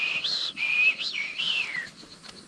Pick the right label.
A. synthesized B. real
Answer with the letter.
B